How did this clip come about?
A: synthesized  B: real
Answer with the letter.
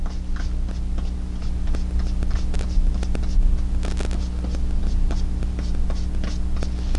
B